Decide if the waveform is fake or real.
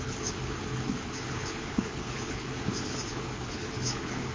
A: fake